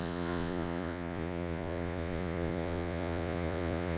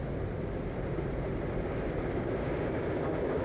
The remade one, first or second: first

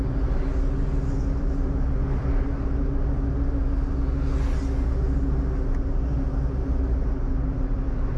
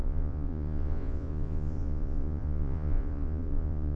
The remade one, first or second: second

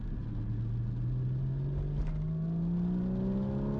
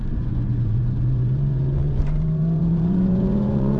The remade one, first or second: second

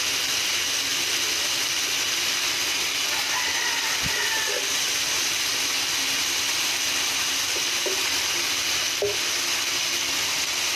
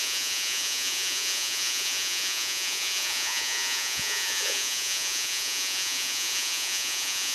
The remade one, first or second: second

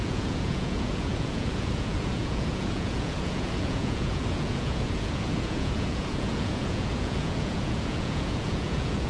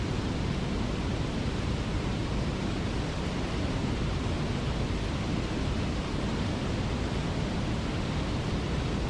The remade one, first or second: first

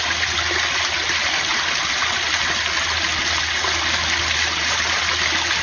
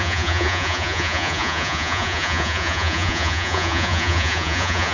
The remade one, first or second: second